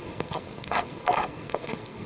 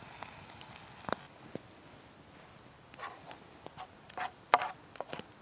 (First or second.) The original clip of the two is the second